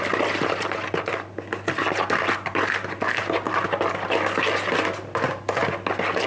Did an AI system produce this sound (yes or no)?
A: no